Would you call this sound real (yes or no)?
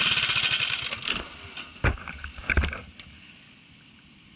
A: yes